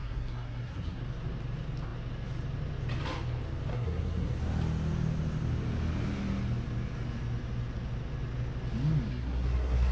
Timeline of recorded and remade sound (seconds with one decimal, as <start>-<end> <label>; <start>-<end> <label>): 0.0-1.0 remade; 1.0-3.7 recorded; 3.7-4.4 remade; 4.4-9.1 recorded; 9.1-9.9 remade